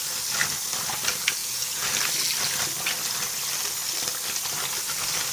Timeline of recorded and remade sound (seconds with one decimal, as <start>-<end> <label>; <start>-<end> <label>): 0.0-1.4 recorded; 1.4-1.9 remade; 1.9-5.3 recorded